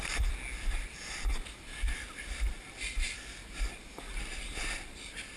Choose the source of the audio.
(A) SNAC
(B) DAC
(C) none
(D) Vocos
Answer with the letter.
C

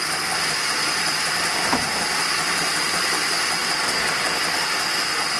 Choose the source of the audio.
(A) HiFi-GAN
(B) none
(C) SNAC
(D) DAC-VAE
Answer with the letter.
B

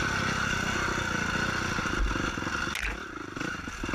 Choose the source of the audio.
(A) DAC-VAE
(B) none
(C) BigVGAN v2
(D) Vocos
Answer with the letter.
B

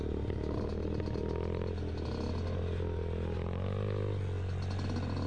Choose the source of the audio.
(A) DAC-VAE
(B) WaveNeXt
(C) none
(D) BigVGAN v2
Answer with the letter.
C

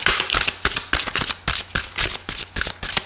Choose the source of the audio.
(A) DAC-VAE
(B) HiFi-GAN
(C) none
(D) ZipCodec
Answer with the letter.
C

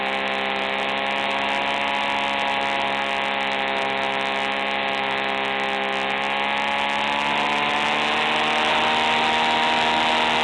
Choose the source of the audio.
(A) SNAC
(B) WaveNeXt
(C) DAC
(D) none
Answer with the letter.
D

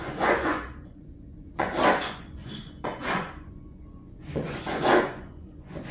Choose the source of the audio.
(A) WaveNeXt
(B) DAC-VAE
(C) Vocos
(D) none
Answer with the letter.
C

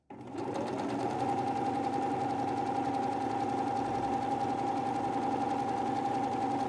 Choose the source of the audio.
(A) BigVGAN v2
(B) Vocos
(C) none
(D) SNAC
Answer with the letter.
C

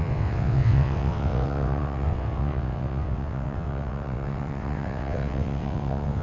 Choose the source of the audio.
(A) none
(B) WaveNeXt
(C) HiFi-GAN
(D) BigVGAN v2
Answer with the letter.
B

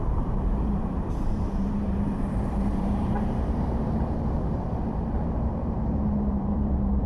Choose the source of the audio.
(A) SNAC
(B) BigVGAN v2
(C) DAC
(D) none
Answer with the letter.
B